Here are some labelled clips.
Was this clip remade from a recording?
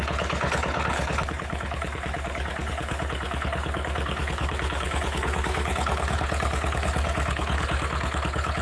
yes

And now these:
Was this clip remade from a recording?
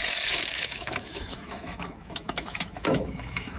yes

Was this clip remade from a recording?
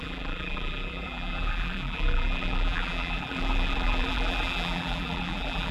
yes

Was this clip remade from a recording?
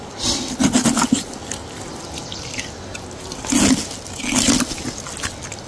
no